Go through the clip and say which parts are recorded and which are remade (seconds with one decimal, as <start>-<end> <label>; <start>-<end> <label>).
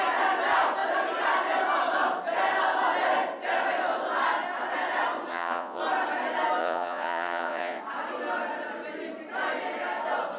0.0-5.3 recorded; 5.3-5.8 remade; 5.8-6.6 recorded; 6.6-7.8 remade; 7.8-10.4 recorded